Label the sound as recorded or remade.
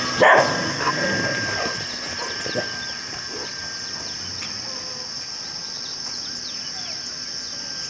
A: recorded